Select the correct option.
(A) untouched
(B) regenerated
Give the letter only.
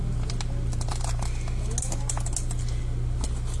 A